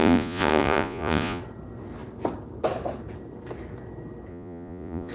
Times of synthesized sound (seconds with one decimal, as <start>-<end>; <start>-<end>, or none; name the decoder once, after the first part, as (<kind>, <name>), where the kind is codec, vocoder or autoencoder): 0.0-1.4 (vocoder, Vocos); 4.3-5.1